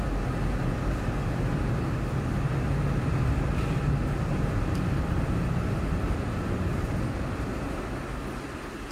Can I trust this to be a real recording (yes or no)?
yes